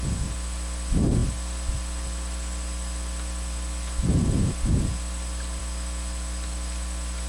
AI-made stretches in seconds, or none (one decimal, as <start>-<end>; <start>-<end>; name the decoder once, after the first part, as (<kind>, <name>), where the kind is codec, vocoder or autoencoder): none